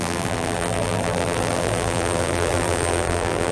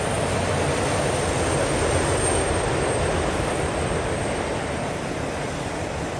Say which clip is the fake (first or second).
first